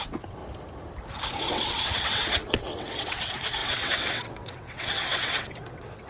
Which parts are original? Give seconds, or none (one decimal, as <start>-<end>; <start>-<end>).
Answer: 0.4-1.3